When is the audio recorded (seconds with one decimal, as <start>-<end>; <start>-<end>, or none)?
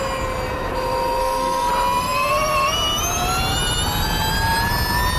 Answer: 0.0-1.2; 1.7-5.2